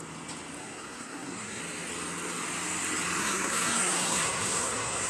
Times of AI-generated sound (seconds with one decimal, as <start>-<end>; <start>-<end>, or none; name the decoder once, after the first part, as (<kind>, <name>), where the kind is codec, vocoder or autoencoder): 0.6-1.6 (codec, SNAC); 3.2-5.1